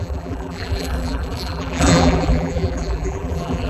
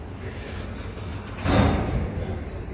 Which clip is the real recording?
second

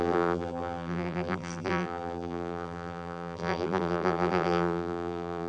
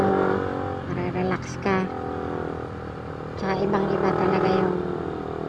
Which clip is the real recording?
second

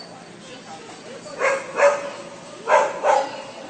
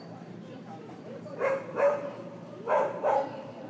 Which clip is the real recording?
first